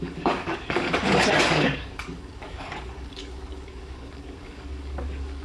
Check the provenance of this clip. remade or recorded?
remade